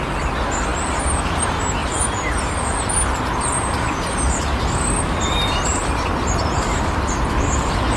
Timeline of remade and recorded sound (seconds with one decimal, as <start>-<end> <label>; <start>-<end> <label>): 0.0-0.7 recorded; 0.7-1.4 remade; 1.4-1.8 recorded; 1.8-4.3 remade; 4.3-5.3 recorded; 5.3-6.1 remade; 6.1-8.0 recorded